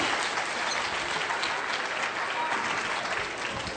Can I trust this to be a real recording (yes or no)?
yes